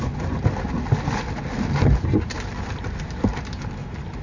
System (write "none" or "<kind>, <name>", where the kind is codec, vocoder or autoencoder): none